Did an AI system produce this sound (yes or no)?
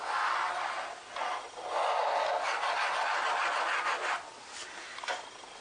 no